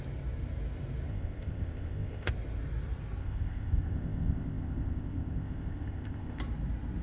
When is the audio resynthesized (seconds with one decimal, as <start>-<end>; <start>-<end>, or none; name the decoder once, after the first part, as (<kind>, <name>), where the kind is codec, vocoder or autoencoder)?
1.1-2.3 (codec, ZipCodec); 3.2-6.4